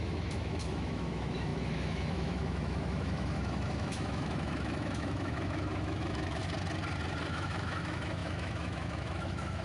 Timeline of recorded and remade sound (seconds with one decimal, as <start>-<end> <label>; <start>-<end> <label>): 0.0-6.4 remade; 6.4-7.3 recorded; 7.3-9.6 remade